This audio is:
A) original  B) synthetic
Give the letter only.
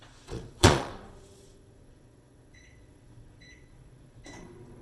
B